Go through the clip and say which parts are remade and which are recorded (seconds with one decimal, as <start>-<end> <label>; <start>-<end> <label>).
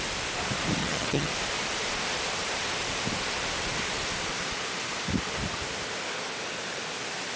0.0-0.8 recorded; 0.8-1.3 remade; 1.3-7.4 recorded